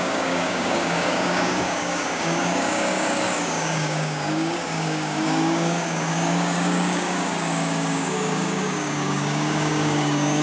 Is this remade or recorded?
remade